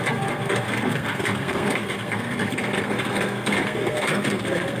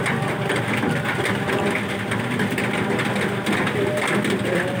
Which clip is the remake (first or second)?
first